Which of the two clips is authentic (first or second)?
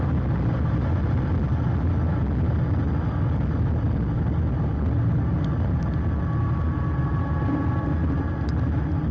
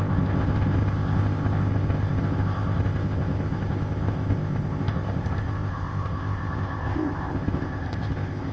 first